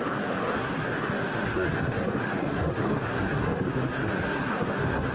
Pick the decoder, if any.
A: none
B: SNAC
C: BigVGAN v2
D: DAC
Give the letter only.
B